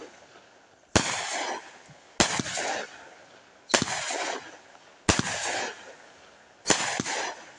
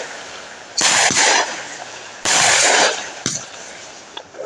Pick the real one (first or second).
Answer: first